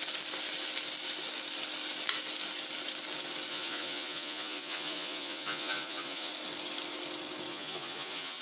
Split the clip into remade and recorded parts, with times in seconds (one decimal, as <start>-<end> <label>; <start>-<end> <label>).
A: 0.0-3.5 recorded; 3.5-6.3 remade; 6.3-7.5 recorded; 7.5-8.4 remade